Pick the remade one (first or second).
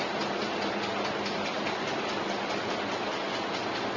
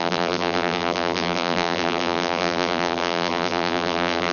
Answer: second